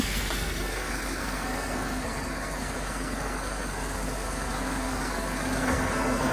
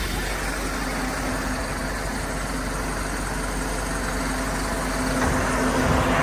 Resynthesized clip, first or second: first